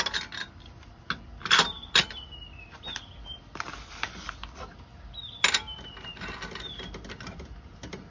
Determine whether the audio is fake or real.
real